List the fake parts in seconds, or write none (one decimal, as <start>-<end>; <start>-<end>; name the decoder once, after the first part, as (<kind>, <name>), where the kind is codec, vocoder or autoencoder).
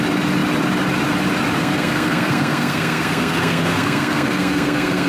1.6-5.1 (codec, SNAC)